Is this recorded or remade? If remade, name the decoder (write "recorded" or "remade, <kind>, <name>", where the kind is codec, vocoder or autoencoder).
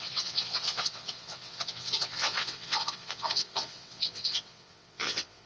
remade, vocoder, WaveNeXt